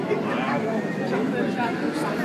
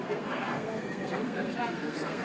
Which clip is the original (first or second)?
first